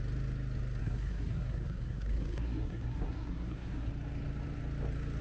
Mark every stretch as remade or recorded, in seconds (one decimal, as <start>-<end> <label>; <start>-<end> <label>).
0.0-0.8 recorded; 0.8-3.9 remade; 3.9-5.2 recorded